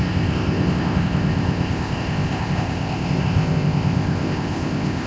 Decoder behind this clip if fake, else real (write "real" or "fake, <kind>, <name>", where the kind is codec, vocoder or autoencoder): fake, codec, ZipCodec